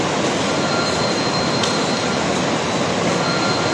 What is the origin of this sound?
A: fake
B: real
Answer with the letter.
B